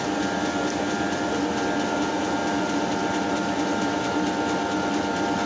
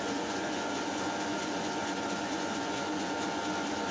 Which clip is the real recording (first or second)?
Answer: first